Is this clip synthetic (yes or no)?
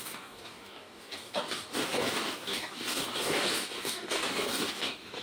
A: yes